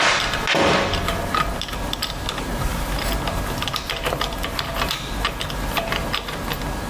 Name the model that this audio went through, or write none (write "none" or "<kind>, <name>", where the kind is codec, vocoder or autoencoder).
none